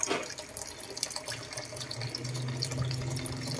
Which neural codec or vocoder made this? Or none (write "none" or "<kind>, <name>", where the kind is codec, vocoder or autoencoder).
none